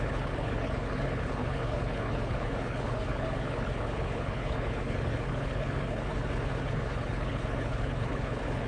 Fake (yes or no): yes